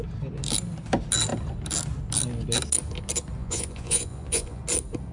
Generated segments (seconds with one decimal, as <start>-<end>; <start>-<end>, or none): 3.4-4.6